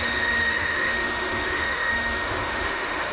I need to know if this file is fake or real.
fake